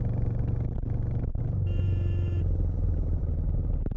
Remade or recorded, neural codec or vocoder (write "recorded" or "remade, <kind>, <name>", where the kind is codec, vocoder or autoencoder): recorded